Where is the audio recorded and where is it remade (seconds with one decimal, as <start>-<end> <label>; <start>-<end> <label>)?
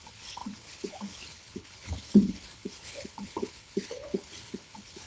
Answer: 0.0-5.1 remade